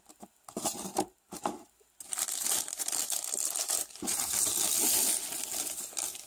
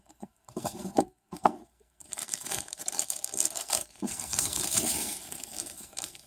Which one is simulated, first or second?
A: second